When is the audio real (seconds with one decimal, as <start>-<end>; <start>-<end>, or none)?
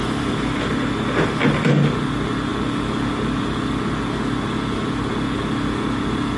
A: 0.0-6.4